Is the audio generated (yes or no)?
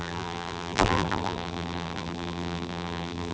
yes